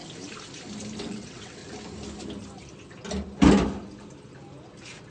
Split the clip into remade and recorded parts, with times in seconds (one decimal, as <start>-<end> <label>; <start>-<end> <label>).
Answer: 0.0-1.0 recorded; 1.0-1.6 remade; 1.6-5.1 recorded

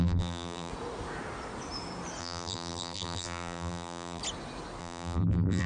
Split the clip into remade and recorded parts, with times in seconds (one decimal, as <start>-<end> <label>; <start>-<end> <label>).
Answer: 0.0-0.7 remade; 0.7-2.2 recorded; 2.2-4.2 remade; 4.2-4.8 recorded; 4.8-5.7 remade

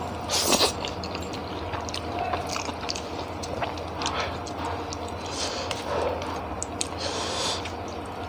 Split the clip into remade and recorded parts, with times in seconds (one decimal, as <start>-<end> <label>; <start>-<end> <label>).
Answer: 0.0-8.3 recorded

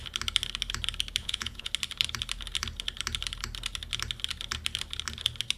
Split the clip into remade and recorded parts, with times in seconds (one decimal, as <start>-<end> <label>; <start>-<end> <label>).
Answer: 0.0-1.2 recorded; 1.2-1.7 remade; 1.7-5.6 recorded

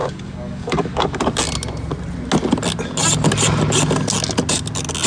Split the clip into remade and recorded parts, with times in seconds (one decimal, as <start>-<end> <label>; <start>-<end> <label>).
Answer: 0.0-1.2 remade; 1.2-5.1 recorded

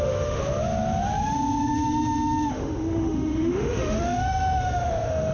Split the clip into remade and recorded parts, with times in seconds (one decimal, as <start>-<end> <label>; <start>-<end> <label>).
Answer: 0.0-0.4 remade; 0.4-2.5 recorded; 2.5-5.3 remade